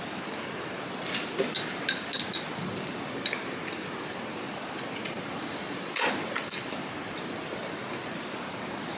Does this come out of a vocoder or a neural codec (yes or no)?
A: no